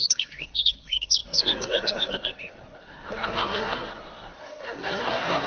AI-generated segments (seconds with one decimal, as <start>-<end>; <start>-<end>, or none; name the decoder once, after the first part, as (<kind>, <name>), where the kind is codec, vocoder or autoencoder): 0.0-5.5 (codec, SNAC)